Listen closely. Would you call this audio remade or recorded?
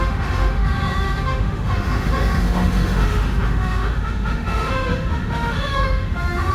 remade